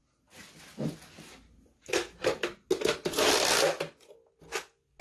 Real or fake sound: real